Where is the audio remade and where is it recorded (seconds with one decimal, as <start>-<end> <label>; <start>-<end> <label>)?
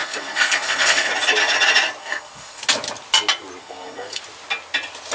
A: 0.0-1.1 remade; 1.1-2.0 recorded; 2.0-2.6 remade; 2.6-3.6 recorded; 3.6-4.2 remade; 4.2-5.1 recorded